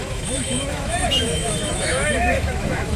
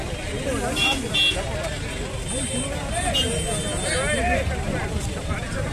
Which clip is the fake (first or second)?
first